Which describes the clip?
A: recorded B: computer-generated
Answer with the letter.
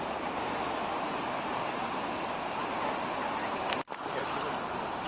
A